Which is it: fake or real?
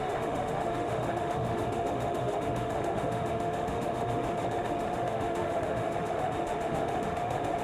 fake